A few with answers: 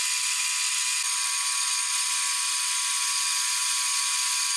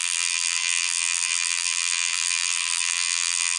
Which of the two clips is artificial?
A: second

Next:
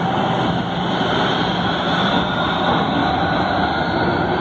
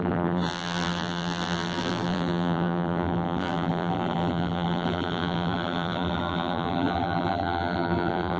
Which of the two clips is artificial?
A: second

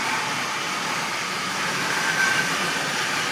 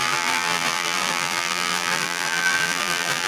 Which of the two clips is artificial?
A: second